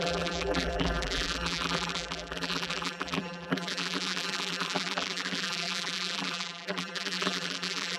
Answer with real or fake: fake